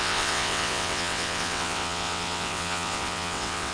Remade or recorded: remade